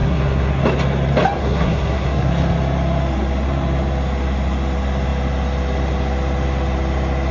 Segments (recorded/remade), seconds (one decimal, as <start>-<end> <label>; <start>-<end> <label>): 0.0-0.6 remade; 0.6-1.4 recorded; 1.4-2.3 remade; 2.3-7.3 recorded